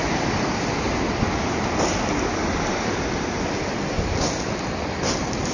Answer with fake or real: real